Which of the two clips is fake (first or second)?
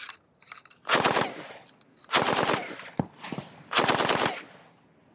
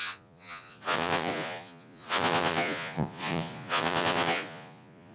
second